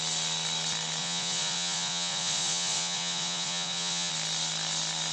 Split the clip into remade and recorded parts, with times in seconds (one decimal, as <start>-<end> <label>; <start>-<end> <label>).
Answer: 0.0-1.0 recorded; 1.0-4.1 remade; 4.1-5.1 recorded